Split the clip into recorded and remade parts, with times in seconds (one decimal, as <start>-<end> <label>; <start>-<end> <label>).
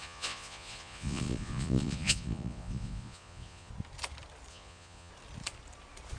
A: 0.0-3.7 remade; 3.7-4.5 recorded; 4.5-5.1 remade; 5.1-6.2 recorded